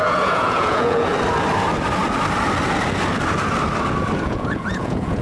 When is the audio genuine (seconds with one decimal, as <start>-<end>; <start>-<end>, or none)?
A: 1.1-4.2